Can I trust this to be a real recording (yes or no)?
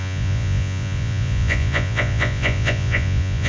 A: no